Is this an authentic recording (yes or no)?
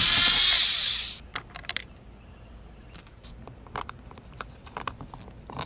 yes